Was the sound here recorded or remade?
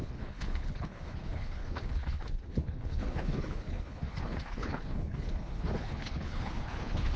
remade